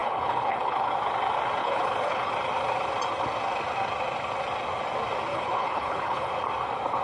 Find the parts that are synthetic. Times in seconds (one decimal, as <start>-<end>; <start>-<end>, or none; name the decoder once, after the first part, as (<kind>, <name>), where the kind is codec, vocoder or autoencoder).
0.0-0.9 (codec, HILCodec); 1.6-2.3; 5.3-6.3